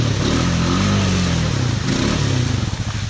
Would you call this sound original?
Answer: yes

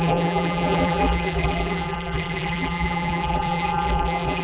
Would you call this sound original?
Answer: no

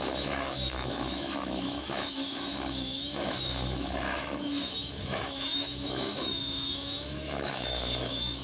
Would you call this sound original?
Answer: no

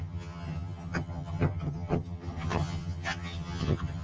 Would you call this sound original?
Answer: no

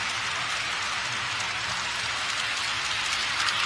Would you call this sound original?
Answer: yes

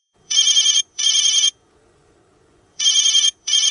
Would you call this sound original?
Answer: no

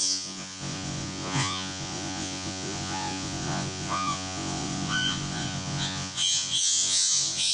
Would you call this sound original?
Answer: no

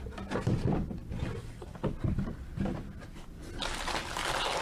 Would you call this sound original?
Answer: yes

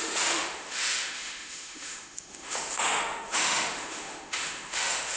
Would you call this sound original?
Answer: no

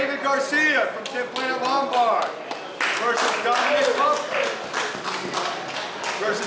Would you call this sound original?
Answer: yes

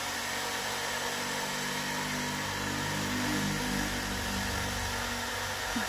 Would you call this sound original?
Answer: yes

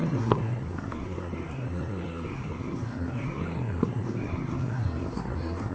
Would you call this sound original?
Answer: no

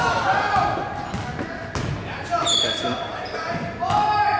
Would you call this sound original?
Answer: yes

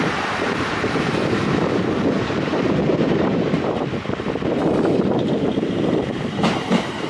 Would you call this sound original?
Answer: no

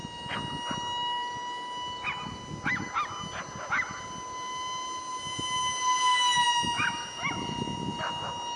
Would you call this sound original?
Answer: yes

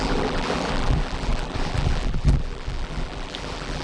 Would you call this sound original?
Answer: no